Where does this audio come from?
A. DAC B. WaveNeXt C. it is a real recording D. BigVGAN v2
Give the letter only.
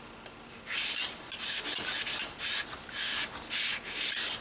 C